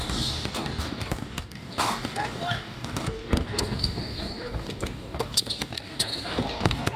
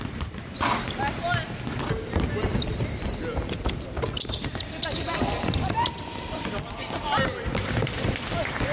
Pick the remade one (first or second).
first